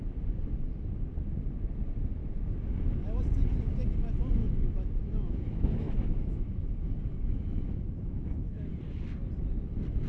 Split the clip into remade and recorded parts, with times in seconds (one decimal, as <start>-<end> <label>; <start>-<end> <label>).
0.0-2.2 recorded; 2.2-3.2 remade; 3.2-4.4 recorded; 4.4-8.7 remade; 8.7-10.1 recorded